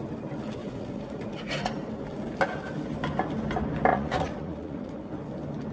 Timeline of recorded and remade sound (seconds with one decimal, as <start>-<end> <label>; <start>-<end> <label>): 0.0-0.6 recorded; 0.6-1.7 remade; 1.7-3.9 recorded; 3.9-5.1 remade; 5.1-5.7 recorded

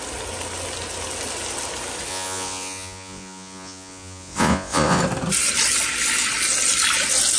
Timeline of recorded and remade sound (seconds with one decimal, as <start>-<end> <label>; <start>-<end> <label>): 0.0-2.1 recorded; 2.1-5.0 remade; 5.0-7.4 recorded

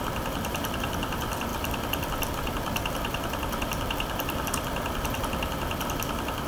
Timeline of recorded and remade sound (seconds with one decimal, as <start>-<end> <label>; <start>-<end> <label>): 0.0-6.5 recorded